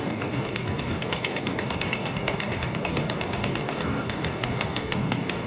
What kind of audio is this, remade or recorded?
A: remade